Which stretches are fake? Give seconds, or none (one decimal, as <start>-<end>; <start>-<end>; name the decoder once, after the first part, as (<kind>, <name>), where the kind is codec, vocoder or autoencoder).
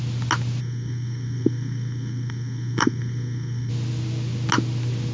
0.6-3.7 (codec, SNAC)